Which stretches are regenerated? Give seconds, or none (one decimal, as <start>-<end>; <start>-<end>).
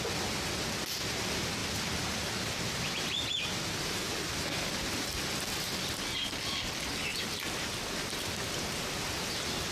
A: none